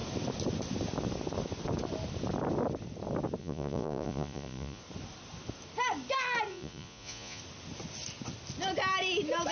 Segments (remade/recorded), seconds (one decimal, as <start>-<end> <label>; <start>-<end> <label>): 0.0-3.4 recorded; 3.4-4.8 remade; 4.8-6.5 recorded; 6.5-7.4 remade; 7.4-9.5 recorded